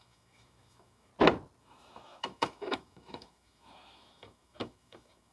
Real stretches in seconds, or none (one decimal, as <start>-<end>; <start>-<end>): 1.1-1.6